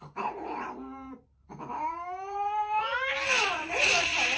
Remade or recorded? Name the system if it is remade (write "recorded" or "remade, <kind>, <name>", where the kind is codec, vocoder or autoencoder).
remade, vocoder, BigVGAN v2